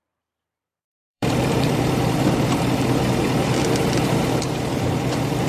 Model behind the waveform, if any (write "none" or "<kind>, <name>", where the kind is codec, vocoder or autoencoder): vocoder, BigVGAN v2